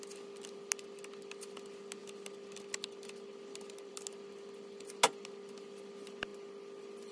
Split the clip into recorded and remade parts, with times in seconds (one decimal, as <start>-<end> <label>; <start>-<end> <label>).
0.0-7.1 recorded